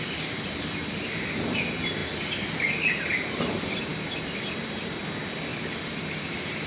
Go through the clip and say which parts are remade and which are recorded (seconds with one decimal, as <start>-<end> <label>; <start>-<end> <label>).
0.0-2.0 recorded; 2.0-2.7 remade; 2.7-5.5 recorded; 5.5-6.7 remade